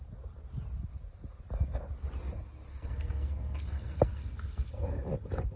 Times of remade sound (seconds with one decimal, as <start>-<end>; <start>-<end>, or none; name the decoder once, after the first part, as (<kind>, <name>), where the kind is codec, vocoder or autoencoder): 2.7-5.0 (codec, SNAC)